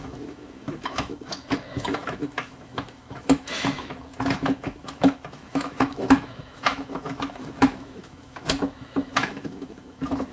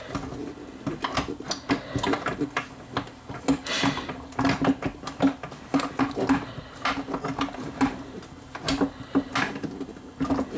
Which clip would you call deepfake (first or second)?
first